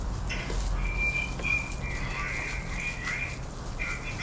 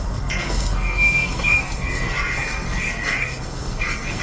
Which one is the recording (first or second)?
first